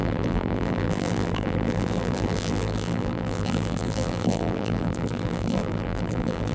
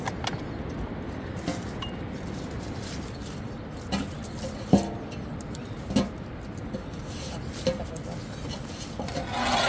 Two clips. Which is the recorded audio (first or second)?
second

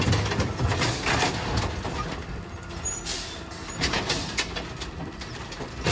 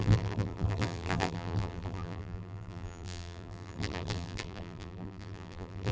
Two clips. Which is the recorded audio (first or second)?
first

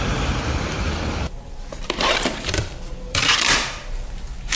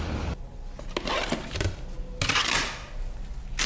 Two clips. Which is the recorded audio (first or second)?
second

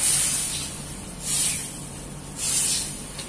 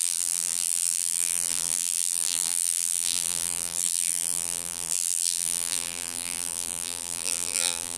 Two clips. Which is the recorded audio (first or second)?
first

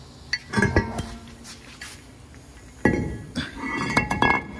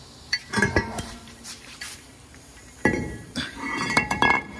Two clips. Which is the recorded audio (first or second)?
first